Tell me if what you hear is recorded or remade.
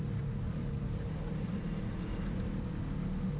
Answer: recorded